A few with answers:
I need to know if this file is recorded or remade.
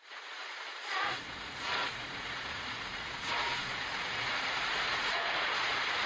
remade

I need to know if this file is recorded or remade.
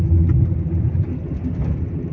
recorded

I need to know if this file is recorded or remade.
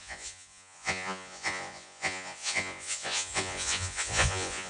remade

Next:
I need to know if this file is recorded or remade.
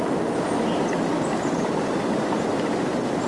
recorded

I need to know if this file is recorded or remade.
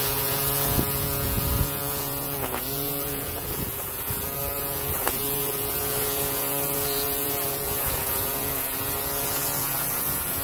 remade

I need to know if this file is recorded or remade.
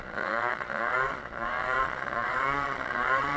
remade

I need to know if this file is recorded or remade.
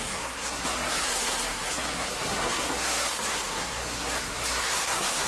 remade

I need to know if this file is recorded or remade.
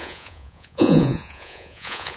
remade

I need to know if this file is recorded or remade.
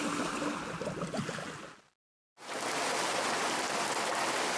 recorded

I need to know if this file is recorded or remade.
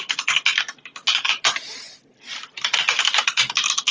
recorded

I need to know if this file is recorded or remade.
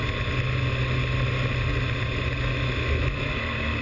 recorded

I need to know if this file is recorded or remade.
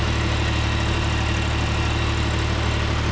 recorded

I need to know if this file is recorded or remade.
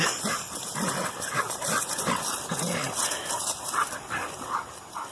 recorded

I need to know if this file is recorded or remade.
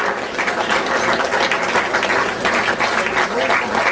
recorded